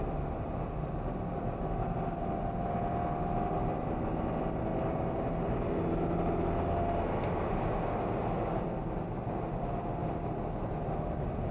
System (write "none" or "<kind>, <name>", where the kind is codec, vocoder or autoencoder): none